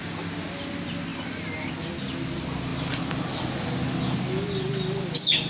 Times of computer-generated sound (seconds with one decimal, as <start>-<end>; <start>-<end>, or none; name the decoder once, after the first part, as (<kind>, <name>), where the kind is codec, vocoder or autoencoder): none